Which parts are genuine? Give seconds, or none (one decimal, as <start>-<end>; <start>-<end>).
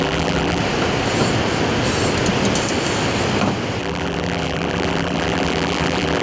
0.6-3.8